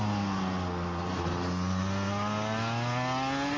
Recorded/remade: recorded